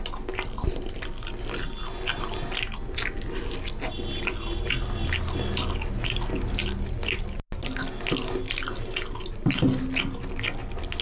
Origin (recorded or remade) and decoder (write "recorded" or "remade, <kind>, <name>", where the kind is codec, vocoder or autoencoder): recorded